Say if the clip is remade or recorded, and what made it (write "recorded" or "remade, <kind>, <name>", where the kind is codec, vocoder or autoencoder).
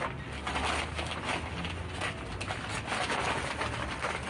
recorded